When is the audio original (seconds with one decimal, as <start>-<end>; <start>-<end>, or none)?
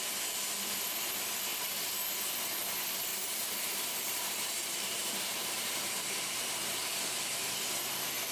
0.0-1.5; 2.1-3.1; 5.9-8.3